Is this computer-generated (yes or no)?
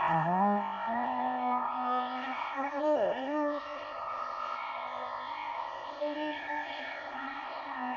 yes